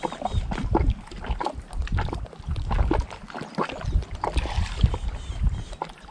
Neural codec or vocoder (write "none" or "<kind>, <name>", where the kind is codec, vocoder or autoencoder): none